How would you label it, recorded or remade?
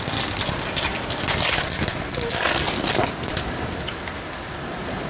recorded